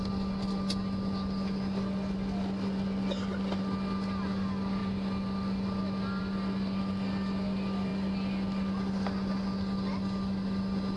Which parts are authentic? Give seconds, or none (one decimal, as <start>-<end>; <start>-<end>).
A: 0.0-11.0